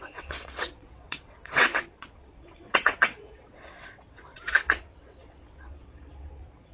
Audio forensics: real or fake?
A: fake